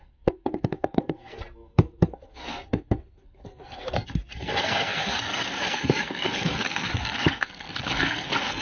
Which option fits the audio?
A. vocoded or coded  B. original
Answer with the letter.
A